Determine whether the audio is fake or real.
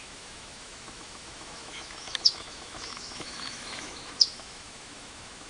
fake